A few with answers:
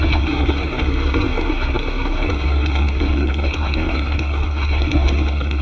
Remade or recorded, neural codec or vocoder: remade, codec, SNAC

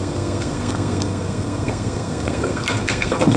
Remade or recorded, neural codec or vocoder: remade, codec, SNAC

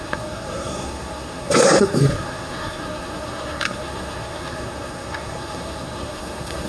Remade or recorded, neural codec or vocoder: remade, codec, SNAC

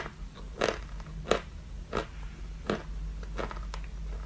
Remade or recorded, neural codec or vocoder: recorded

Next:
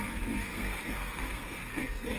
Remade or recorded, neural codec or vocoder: remade, codec, SNAC